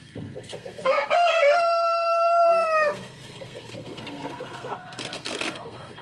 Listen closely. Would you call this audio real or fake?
fake